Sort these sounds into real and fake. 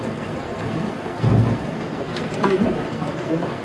fake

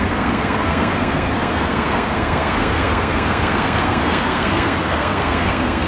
fake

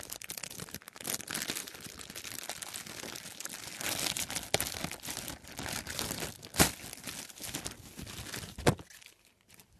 real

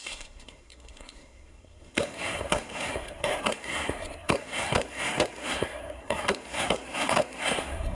fake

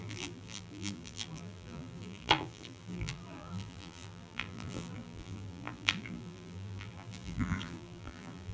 fake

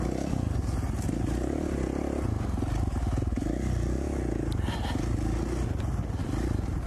real